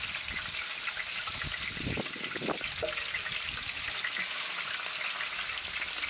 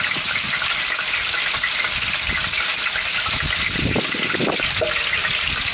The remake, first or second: second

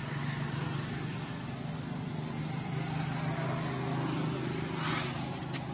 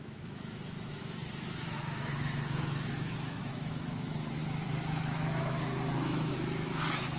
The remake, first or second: second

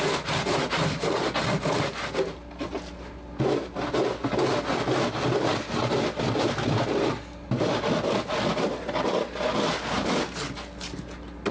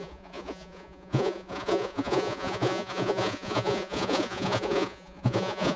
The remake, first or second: second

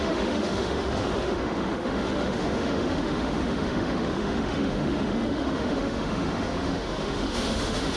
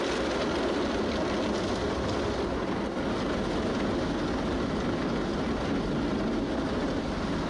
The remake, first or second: first